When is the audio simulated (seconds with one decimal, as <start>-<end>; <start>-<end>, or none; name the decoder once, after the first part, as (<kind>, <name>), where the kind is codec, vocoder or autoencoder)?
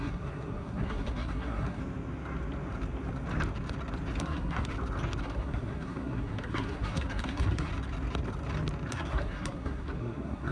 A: 0.0-1.8 (codec, SNAC); 4.2-4.7; 5.2-7.7; 8.9-10.5